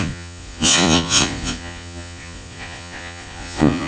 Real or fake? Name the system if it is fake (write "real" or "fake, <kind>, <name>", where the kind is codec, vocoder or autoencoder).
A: fake, vocoder, Vocos